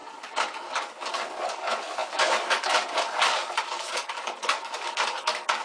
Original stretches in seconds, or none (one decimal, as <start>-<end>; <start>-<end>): none